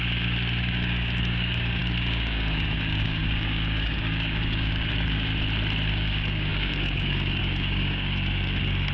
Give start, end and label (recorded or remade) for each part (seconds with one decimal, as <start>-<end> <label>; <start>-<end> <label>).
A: 0.0-5.3 remade; 5.3-5.9 recorded; 5.9-8.9 remade